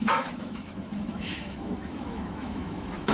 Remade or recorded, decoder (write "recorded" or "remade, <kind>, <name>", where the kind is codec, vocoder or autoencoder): remade, autoencoder, DAC-VAE